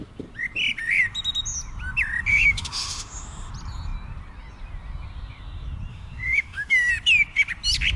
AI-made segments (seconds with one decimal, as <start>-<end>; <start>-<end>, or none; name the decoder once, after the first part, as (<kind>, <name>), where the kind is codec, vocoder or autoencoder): 2.3-3.5 (autoencoder, DAC-VAE); 5.9-6.9